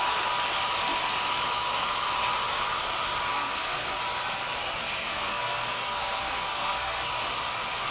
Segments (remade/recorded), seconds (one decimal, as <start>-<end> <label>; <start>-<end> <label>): 0.0-3.3 recorded; 3.3-4.0 remade; 4.0-4.8 recorded; 4.8-7.1 remade; 7.1-7.9 recorded